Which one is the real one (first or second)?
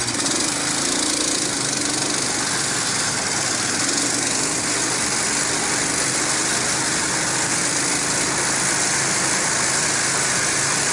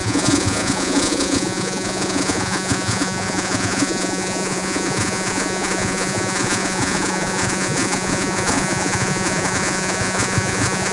first